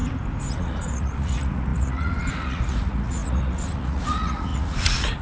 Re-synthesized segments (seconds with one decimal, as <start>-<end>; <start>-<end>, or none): 0.5-5.2